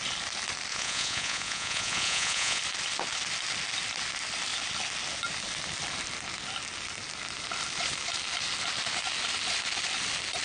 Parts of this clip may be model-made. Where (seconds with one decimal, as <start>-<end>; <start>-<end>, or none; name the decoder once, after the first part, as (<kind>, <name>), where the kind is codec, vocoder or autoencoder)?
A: 0.7-2.6 (vocoder, Vocos)